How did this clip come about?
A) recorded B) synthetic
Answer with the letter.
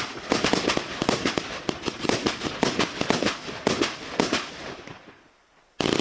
B